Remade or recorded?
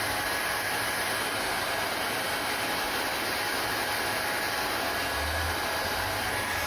recorded